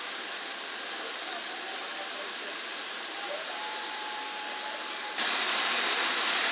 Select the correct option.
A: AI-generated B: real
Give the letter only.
A